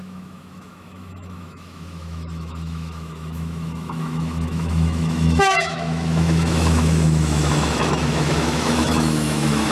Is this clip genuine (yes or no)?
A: no